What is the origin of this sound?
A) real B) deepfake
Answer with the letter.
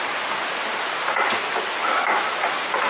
A